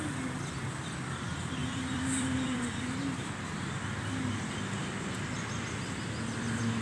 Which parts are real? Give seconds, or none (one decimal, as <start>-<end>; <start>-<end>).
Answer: 0.0-1.6; 3.3-6.8